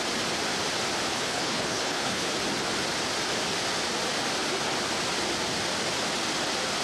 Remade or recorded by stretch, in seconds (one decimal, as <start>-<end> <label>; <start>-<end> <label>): 0.0-1.1 recorded; 1.1-2.3 remade; 2.3-6.8 recorded